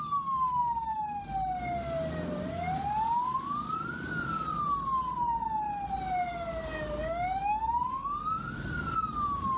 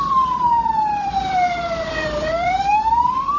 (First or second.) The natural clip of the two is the first